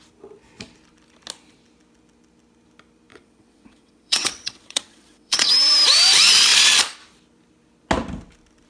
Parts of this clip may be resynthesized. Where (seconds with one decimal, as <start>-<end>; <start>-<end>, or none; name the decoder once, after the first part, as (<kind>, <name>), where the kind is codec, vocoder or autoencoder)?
3.1-5.5 (vocoder, WaveNeXt)